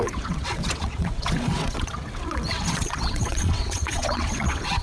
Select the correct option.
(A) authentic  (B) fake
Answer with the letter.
B